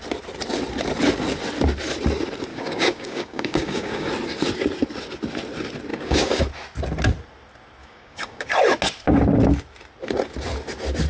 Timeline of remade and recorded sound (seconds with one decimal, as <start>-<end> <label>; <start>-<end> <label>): 0.0-2.5 recorded; 2.5-4.1 remade; 4.1-5.9 recorded; 5.9-6.4 remade; 6.4-7.8 recorded; 7.8-8.5 remade; 8.5-11.1 recorded